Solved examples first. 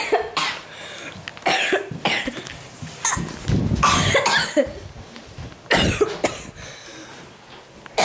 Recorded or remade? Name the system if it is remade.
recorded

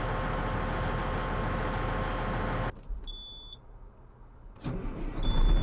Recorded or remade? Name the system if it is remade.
recorded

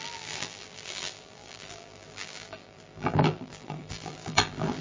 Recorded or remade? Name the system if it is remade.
remade, vocoder, BigVGAN v2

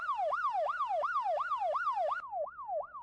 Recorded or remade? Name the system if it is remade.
recorded